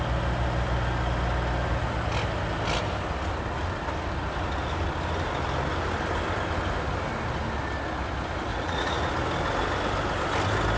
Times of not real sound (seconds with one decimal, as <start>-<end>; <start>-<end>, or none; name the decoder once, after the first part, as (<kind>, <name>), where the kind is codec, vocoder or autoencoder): 8.5-9.1 (vocoder, Vocos)